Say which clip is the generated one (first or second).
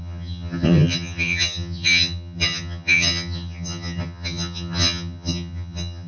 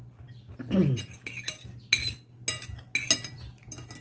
first